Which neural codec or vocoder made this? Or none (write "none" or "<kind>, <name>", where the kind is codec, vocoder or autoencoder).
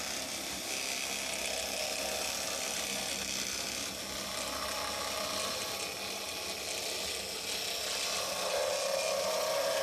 none